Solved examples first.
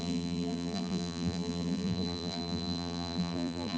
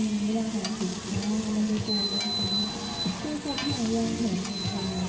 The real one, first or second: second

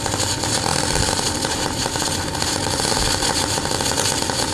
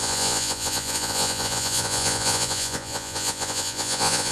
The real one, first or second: first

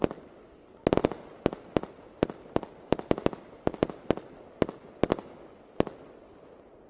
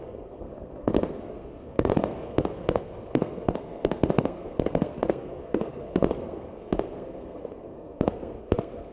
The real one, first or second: first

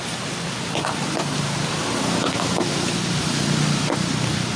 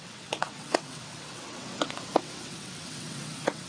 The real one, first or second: first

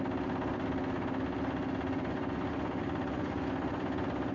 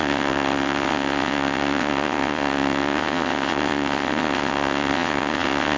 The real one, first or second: first